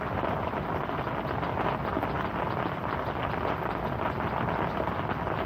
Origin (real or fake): real